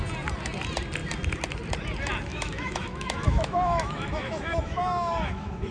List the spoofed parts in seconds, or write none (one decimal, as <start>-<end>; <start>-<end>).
2.3-5.7